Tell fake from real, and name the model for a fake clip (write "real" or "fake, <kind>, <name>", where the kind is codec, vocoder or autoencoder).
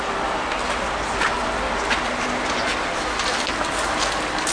real